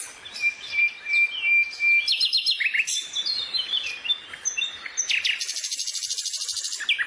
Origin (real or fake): real